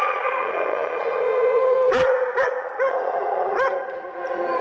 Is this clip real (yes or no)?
no